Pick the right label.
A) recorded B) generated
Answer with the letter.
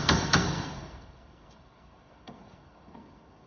B